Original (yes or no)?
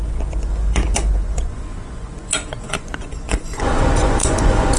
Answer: no